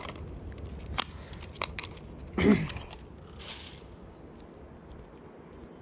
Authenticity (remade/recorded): recorded